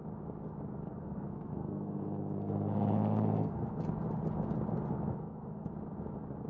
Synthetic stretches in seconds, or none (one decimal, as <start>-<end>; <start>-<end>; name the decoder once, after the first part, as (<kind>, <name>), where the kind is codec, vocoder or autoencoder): 0.9-3.8 (codec, SNAC); 5.1-5.7